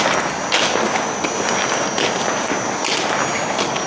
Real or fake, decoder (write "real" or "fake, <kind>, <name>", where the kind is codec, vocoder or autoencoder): real